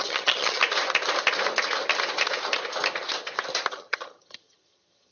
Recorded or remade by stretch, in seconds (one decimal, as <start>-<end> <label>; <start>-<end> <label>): 0.0-0.6 remade; 0.6-3.7 recorded; 3.7-5.1 remade